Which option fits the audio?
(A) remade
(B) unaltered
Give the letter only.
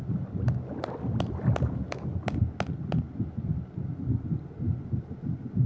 B